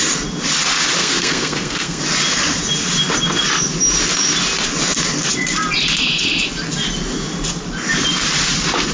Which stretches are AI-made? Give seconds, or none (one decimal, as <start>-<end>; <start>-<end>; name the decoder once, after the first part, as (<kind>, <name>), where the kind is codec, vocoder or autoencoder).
1.0-2.0 (codec, SNAC)